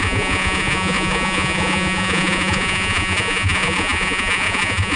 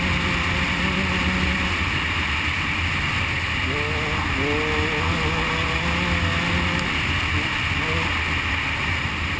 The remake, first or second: first